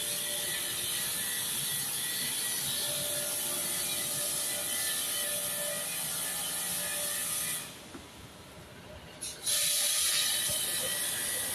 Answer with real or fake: real